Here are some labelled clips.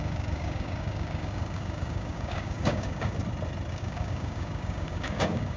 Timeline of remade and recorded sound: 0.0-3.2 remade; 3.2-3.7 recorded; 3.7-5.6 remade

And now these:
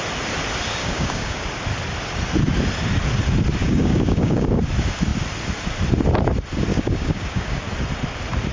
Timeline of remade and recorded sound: 0.0-0.8 recorded; 0.8-1.5 remade; 1.5-3.6 recorded; 3.6-4.6 remade; 4.6-6.7 recorded; 6.7-7.6 remade; 7.6-8.5 recorded

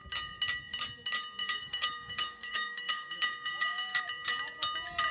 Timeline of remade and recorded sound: 0.0-1.4 recorded; 1.4-4.0 remade; 4.0-5.1 recorded

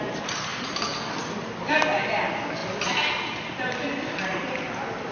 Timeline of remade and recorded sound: 0.0-5.1 recorded

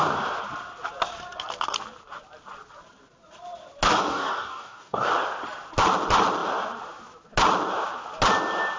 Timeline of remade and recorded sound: 0.0-4.1 recorded; 4.1-5.1 remade; 5.1-8.8 recorded

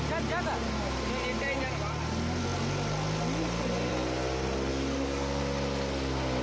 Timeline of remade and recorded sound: 0.0-4.7 recorded; 4.7-5.4 remade; 5.4-6.4 recorded

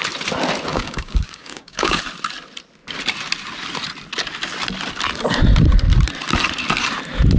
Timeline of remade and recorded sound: 0.0-0.7 recorded; 0.7-2.0 remade; 2.0-7.4 recorded

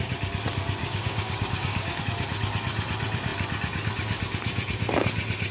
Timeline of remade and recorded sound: 0.0-0.8 recorded; 0.8-2.0 remade; 2.0-5.5 recorded